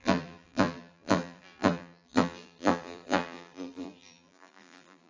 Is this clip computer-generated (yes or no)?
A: yes